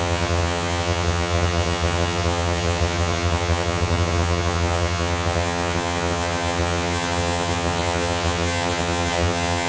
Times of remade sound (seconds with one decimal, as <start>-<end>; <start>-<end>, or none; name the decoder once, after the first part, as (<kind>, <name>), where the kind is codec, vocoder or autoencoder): 0.0-9.7 (vocoder, HiFi-GAN)